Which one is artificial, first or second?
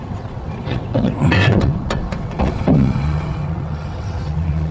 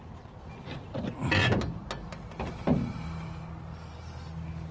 first